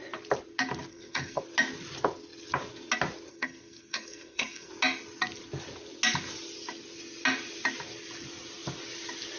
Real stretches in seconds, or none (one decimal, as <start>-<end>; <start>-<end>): 0.0-0.9; 1.4-3.3; 4.7-9.4